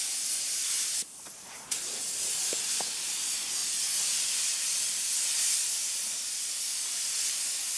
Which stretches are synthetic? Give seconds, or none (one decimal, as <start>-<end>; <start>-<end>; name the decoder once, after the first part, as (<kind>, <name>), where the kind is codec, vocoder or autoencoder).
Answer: none